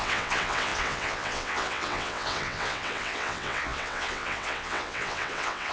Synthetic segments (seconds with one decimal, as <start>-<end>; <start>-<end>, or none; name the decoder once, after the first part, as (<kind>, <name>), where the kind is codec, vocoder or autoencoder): 0.0-5.7 (vocoder, WaveNeXt)